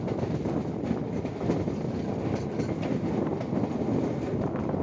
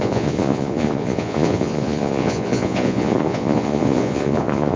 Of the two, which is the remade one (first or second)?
second